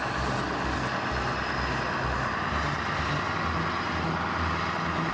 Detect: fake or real real